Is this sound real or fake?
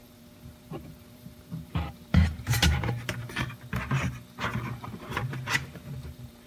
fake